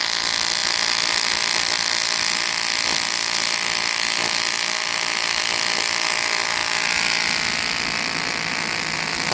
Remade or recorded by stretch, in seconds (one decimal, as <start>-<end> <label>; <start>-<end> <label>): 0.0-9.3 recorded